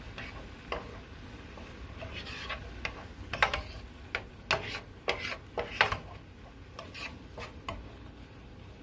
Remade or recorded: recorded